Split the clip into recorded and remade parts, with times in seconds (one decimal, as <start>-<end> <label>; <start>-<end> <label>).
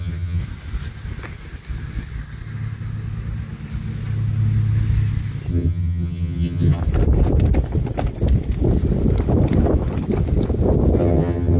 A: 0.0-0.4 remade; 0.4-5.5 recorded; 5.5-6.8 remade; 6.8-11.0 recorded; 11.0-11.6 remade